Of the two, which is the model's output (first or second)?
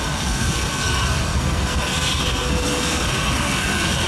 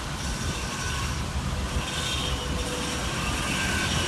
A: first